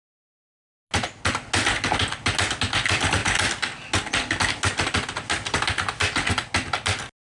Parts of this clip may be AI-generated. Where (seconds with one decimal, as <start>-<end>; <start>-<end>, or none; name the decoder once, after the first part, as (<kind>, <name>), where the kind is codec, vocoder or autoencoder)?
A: none